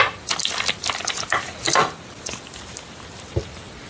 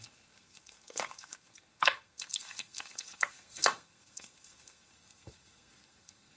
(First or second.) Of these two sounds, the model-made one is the second